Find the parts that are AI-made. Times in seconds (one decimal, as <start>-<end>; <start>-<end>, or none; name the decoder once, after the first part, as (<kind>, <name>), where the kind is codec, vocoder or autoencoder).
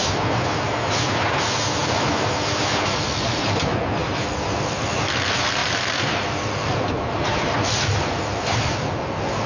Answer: 4.0-4.6 (vocoder, BigVGAN v2); 5.6-8.2